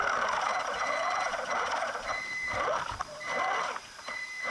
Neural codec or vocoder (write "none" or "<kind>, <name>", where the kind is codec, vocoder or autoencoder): vocoder, BigVGAN v2